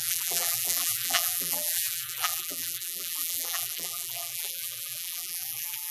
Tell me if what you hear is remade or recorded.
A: remade